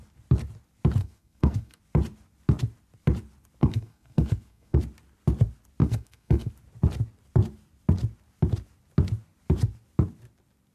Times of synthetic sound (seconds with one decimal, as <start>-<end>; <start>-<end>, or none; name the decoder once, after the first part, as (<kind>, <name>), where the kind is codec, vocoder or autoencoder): 1.0-1.8 (codec, SNAC); 3.6-4.8; 5.8-6.5